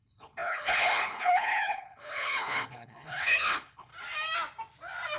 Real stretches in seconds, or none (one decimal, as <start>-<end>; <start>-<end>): 3.9-5.2